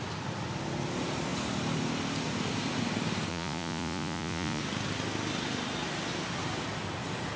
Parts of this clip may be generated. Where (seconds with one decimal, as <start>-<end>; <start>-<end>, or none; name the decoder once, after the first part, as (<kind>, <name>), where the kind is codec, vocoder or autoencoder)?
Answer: 3.3-4.6 (vocoder, Vocos)